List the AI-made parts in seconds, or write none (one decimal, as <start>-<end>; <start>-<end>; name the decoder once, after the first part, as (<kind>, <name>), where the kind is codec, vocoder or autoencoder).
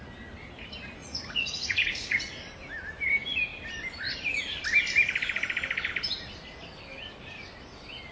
1.0-2.2 (vocoder, Vocos)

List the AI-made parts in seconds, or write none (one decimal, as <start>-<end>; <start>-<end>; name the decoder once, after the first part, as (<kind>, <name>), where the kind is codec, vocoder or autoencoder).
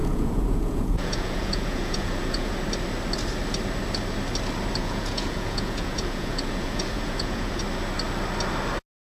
0.0-2.5 (vocoder, Vocos); 4.8-7.6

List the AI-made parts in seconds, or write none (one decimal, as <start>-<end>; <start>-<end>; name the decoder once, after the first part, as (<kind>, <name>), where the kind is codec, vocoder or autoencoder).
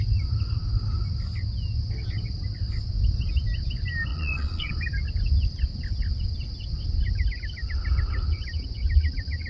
4.1-4.7 (vocoder, Vocos)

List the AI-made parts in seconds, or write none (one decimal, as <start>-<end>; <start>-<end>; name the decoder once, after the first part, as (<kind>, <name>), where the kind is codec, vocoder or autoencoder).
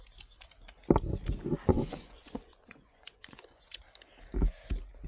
1.7-3.7 (vocoder, Vocos)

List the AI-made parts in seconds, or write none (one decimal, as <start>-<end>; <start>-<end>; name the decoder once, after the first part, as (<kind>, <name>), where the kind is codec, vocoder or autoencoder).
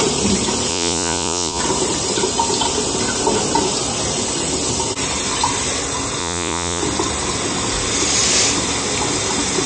0.7-1.6 (vocoder, Vocos); 6.2-6.8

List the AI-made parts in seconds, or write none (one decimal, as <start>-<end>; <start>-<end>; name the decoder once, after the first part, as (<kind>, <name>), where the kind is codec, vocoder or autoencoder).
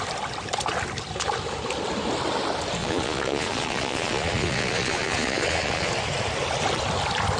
2.8-5.9 (vocoder, Vocos)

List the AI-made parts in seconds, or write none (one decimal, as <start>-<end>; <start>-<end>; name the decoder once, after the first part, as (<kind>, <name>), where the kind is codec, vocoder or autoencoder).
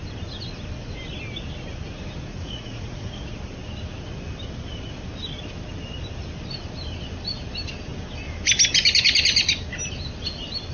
2.3-3.2 (vocoder, Vocos)